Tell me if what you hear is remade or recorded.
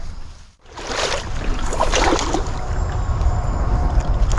recorded